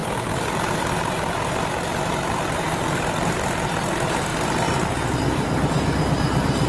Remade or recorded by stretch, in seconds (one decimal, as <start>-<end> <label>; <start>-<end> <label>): 0.0-4.3 remade; 4.3-5.1 recorded; 5.1-6.7 remade